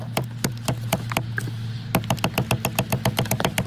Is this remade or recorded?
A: recorded